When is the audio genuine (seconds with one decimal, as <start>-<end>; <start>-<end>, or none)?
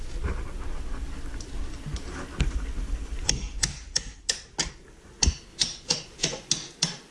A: 0.0-5.5; 6.5-7.1